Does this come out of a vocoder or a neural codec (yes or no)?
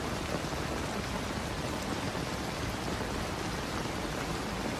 no